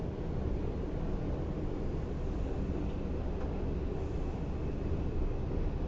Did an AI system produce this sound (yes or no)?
no